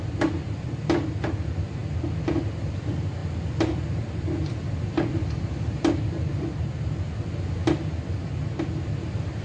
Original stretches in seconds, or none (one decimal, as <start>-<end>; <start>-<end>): none